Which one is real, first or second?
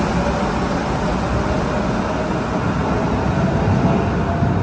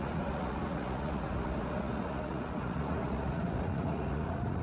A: first